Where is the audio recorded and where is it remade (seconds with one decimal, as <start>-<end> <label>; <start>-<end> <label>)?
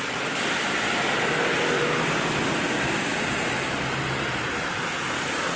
0.0-5.6 recorded